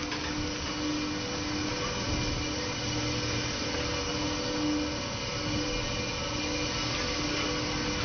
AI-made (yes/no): no